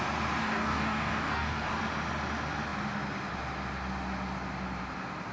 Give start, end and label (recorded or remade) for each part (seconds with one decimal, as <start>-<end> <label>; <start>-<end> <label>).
0.0-0.4 recorded; 0.4-1.8 remade; 1.8-5.3 recorded